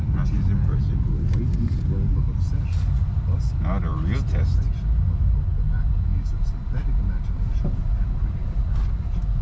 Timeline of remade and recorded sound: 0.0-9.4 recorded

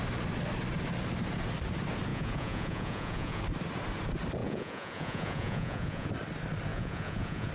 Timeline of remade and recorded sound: 0.0-2.1 recorded; 2.1-3.4 remade; 3.4-4.4 recorded; 4.4-6.1 remade; 6.1-6.7 recorded; 6.7-7.5 remade

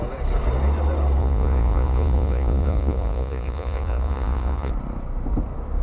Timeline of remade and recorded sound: 0.0-1.2 recorded; 1.2-4.7 remade; 4.7-5.8 recorded

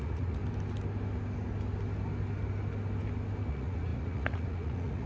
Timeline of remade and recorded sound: 0.0-0.4 remade; 0.4-3.5 recorded; 3.5-5.1 remade